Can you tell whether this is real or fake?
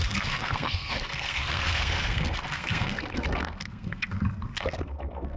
fake